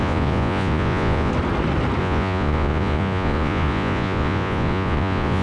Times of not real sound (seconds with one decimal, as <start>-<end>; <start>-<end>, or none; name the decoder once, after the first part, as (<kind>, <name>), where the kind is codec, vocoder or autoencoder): 0.0-1.3 (vocoder, Vocos); 2.0-5.4

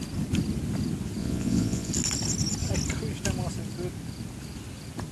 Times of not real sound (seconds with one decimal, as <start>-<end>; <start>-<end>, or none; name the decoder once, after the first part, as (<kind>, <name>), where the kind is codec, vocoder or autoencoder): 1.2-1.9 (vocoder, Vocos)

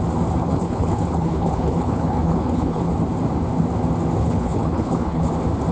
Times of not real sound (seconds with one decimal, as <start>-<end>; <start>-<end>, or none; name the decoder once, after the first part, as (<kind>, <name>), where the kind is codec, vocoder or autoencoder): 0.4-2.9 (codec, HILCodec); 4.2-5.3